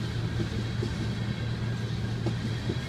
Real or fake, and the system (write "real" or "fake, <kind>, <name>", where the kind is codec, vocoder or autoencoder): real